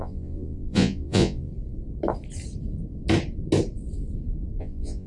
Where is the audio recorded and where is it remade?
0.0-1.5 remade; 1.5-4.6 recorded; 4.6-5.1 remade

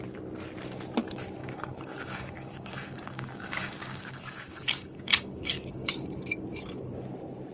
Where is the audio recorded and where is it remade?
0.0-1.4 recorded; 1.4-5.9 remade; 5.9-7.5 recorded